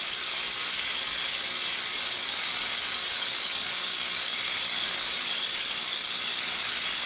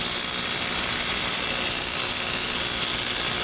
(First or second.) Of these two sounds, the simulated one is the first